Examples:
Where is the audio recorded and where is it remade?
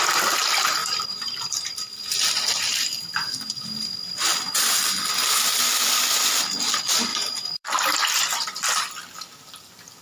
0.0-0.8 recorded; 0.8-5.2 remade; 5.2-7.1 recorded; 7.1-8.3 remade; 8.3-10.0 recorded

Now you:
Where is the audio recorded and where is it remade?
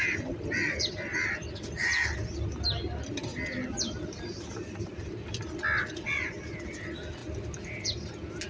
0.0-8.5 recorded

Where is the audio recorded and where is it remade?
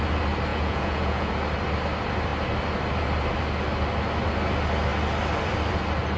0.0-0.5 recorded; 0.5-1.3 remade; 1.3-6.2 recorded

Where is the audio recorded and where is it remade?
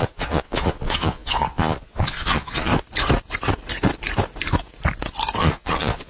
0.0-2.7 remade; 2.7-5.4 recorded; 5.4-6.1 remade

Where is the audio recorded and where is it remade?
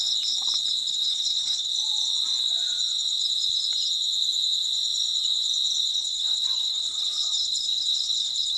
0.0-0.9 recorded; 0.9-1.7 remade; 1.7-5.9 recorded; 5.9-8.6 remade